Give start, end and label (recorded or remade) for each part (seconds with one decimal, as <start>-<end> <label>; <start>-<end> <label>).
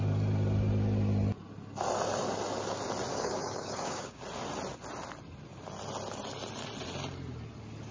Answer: 0.0-3.1 recorded; 3.1-4.2 remade; 4.2-7.9 recorded